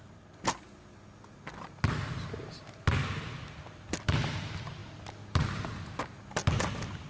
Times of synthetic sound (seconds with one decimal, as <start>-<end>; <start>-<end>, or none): none

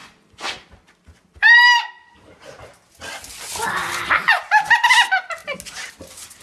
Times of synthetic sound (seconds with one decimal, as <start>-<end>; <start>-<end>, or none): 0.0-0.5

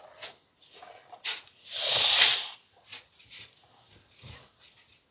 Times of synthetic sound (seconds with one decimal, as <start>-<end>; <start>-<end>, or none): 1.3-2.1